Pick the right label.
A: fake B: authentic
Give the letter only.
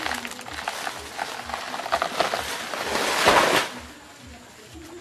B